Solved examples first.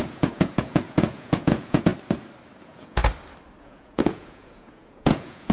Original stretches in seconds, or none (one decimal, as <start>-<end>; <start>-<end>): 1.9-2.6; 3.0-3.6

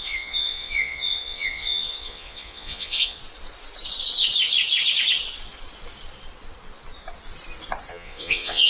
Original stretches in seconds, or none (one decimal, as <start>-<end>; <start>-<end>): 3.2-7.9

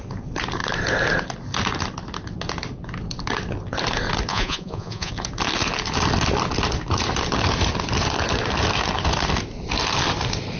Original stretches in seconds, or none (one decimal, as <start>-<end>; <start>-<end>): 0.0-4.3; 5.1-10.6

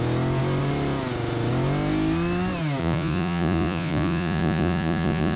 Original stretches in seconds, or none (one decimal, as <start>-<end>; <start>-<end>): 0.0-2.8